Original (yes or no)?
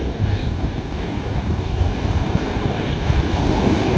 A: no